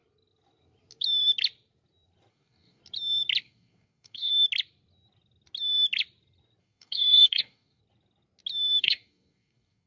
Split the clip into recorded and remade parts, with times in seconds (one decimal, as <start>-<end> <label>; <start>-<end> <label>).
0.0-2.3 recorded; 2.3-2.8 remade; 2.8-3.4 recorded; 3.4-4.3 remade; 4.3-6.6 recorded; 6.6-7.8 remade; 7.8-8.8 recorded; 8.8-9.9 remade